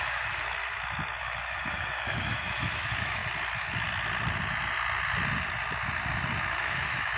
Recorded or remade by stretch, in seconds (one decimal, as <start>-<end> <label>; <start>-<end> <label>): 0.0-0.6 remade; 0.6-1.2 recorded; 1.2-3.2 remade; 3.2-6.6 recorded; 6.6-7.2 remade